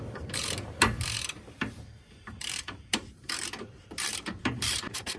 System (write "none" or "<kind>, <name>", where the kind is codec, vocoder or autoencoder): vocoder, BigVGAN v2